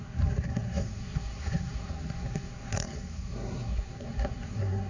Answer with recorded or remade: remade